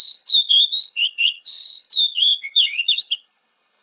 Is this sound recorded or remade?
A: remade